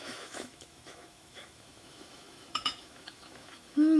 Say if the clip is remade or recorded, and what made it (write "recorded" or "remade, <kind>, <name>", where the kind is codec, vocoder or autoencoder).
remade, autoencoder, DAC-VAE